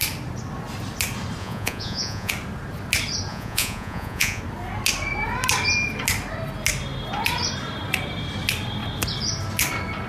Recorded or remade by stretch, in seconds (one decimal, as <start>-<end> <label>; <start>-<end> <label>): 0.0-1.4 recorded; 1.4-2.3 remade; 2.3-3.3 recorded; 3.3-4.4 remade; 4.4-10.1 recorded

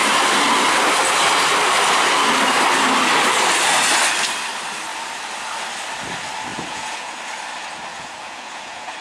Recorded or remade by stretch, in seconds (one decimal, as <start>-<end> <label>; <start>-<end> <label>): 0.0-6.5 recorded; 6.5-7.2 remade; 7.2-7.9 recorded; 7.9-9.0 remade

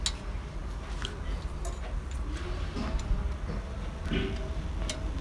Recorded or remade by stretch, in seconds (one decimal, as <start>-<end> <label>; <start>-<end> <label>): 0.0-5.2 recorded